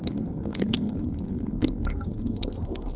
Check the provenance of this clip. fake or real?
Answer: fake